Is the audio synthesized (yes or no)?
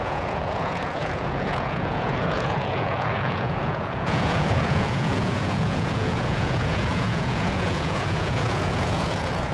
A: yes